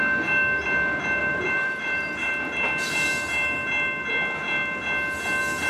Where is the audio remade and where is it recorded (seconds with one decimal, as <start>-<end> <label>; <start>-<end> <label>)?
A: 0.0-1.2 recorded; 1.2-2.3 remade; 2.3-5.7 recorded